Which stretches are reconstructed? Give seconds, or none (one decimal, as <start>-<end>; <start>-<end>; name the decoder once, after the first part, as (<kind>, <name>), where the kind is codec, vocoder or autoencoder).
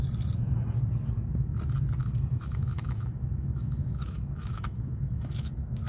2.0-5.5 (autoencoder, DAC-VAE)